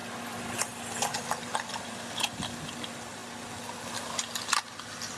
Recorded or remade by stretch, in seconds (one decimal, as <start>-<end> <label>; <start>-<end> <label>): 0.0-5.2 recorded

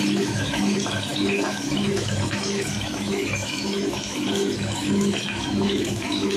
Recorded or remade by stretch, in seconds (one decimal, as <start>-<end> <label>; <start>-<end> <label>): 0.0-6.4 remade

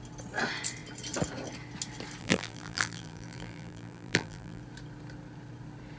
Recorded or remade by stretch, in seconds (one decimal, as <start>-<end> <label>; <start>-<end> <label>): 0.0-2.2 recorded; 2.2-4.6 remade; 4.6-6.0 recorded

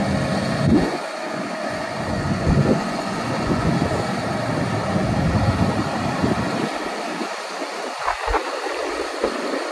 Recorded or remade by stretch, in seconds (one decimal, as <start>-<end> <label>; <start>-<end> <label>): 0.0-0.4 recorded; 0.4-3.7 remade; 3.7-9.7 recorded

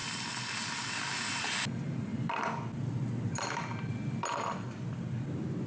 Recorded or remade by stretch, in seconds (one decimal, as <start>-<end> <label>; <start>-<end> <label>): 0.0-5.7 recorded

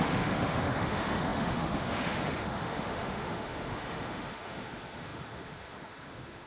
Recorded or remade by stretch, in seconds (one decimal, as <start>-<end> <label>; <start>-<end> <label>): 0.0-6.5 remade